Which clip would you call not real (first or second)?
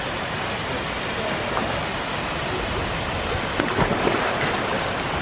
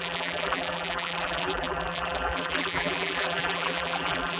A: second